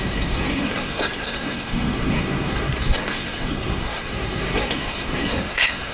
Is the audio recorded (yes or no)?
no